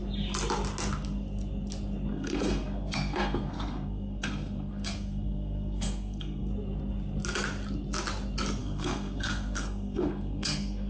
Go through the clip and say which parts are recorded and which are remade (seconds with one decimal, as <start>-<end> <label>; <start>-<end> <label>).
0.0-2.1 recorded; 2.1-6.5 remade; 6.5-8.6 recorded; 8.6-10.9 remade

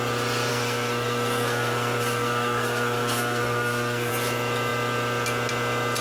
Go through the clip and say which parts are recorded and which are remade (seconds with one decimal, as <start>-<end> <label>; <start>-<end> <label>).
0.0-0.5 recorded; 0.5-4.1 remade; 4.1-6.0 recorded

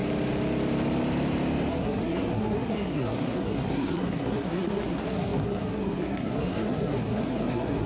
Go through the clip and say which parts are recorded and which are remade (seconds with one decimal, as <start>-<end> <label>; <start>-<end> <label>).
0.0-1.7 recorded; 1.7-7.9 remade

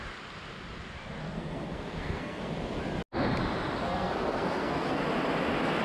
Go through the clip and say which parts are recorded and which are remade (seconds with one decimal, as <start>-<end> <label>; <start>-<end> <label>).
0.0-1.2 recorded; 1.2-2.5 remade; 2.5-3.8 recorded; 3.8-5.0 remade; 5.0-5.8 recorded

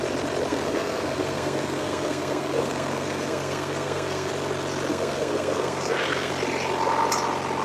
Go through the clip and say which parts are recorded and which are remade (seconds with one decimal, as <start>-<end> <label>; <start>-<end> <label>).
0.0-0.5 recorded; 0.5-4.3 remade; 4.3-4.9 recorded; 4.9-6.3 remade; 6.3-7.6 recorded